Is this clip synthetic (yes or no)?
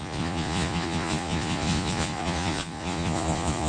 yes